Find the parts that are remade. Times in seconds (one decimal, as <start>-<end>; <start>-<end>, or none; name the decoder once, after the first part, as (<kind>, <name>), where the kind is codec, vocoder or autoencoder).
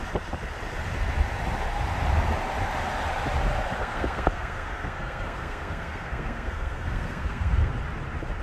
3.8-7.7 (codec, SNAC)